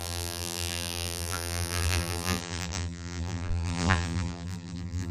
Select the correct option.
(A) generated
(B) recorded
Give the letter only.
A